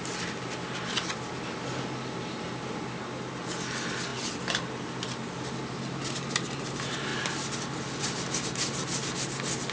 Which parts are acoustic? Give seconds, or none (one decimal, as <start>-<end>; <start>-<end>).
0.0-9.7